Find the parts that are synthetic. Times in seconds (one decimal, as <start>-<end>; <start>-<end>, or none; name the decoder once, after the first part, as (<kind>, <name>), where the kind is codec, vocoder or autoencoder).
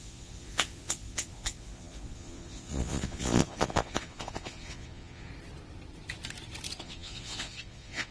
0.0-5.3 (vocoder, Vocos); 6.8-8.1